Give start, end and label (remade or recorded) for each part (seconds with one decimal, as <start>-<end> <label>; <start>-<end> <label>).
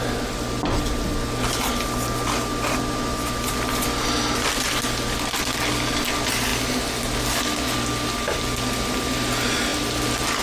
0.0-10.4 recorded